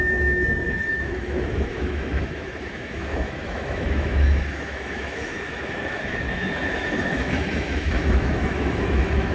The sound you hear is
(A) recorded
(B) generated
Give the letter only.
B